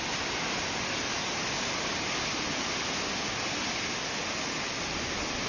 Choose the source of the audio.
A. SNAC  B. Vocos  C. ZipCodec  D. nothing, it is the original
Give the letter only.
D